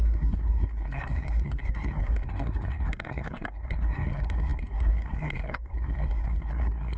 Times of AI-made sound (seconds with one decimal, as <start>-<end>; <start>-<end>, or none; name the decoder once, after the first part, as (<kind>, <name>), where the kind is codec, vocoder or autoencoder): 0.0-7.0 (codec, SNAC)